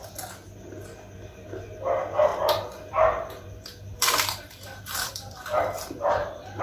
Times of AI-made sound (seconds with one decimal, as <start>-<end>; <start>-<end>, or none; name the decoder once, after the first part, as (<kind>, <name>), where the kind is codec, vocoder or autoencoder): 2.3-6.6 (vocoder, BigVGAN v2)